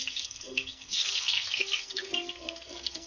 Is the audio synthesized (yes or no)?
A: yes